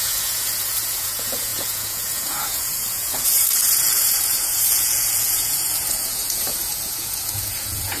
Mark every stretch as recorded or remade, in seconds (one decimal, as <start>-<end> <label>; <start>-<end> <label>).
0.0-8.0 remade

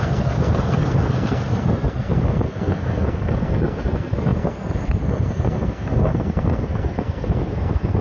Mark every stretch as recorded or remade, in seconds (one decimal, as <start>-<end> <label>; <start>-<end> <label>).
0.0-8.0 remade

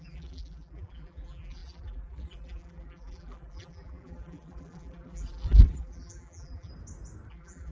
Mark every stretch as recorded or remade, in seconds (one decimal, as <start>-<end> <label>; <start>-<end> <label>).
0.0-6.7 remade; 6.7-7.3 recorded; 7.3-7.7 remade